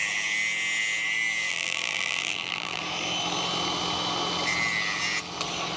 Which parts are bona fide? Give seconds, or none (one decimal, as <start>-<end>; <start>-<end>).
0.0-1.5; 2.8-5.8